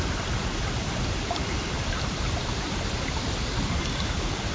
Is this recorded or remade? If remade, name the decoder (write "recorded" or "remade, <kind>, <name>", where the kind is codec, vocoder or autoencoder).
recorded